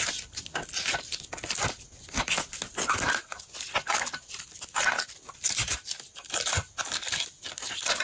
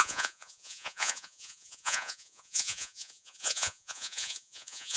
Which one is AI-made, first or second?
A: second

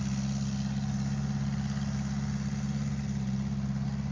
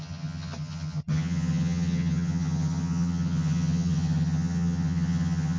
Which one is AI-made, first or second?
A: second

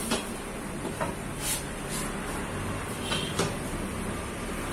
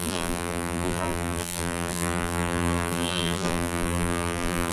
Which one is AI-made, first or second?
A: second